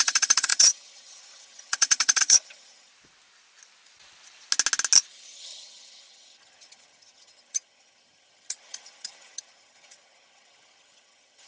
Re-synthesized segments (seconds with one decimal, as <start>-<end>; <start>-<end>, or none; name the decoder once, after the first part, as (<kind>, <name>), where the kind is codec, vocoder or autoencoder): 0.0-2.9 (vocoder, HiFi-GAN); 5.1-11.5